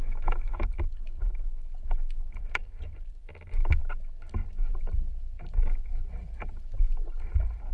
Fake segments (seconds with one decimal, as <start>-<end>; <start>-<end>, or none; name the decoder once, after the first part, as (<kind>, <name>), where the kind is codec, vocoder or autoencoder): 0.0-0.6 (autoencoder, DAC-VAE)